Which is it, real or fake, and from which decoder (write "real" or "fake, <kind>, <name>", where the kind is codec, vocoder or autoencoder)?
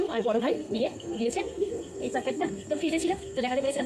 fake, codec, SNAC